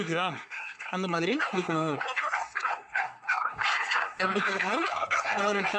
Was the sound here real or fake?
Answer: fake